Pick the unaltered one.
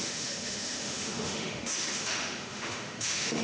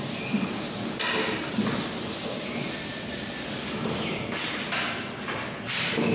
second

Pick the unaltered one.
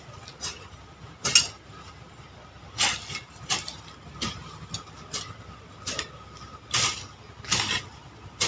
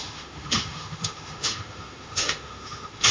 first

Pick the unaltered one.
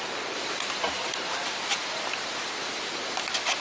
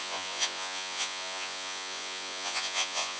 first